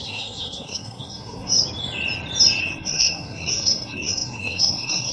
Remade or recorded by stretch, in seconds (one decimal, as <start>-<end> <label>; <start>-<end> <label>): 0.0-1.5 remade; 1.5-2.6 recorded; 2.6-5.1 remade